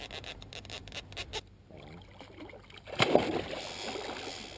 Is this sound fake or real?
real